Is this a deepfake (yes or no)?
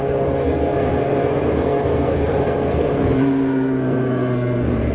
yes